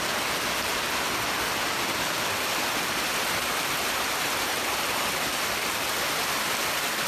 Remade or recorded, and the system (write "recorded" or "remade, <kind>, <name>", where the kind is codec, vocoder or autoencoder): recorded